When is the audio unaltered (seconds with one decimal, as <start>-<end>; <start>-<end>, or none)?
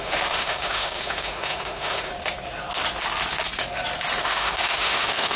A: 2.1-4.2